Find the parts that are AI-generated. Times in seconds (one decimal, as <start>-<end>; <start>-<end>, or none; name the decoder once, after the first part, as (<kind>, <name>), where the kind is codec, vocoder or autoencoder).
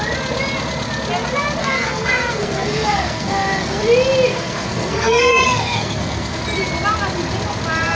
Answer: 1.6-3.8 (codec, SNAC); 4.3-6.4